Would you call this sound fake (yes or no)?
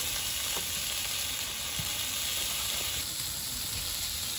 no